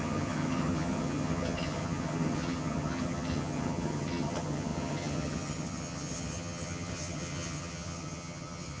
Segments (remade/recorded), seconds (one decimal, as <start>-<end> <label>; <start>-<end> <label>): 0.0-8.8 remade